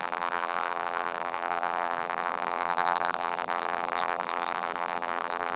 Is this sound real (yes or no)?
no